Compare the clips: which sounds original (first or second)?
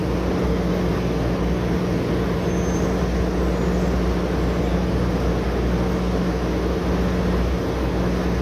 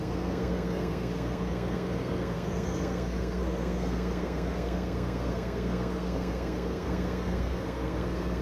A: first